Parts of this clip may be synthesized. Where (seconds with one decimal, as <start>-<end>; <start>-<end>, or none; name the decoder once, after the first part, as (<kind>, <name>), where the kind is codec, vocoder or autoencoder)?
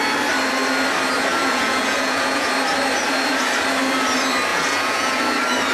1.3-2.5 (vocoder, Vocos); 4.5-5.2